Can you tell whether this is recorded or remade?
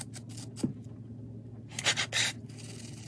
recorded